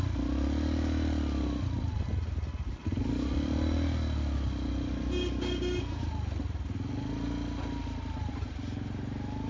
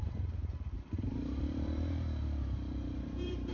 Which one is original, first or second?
first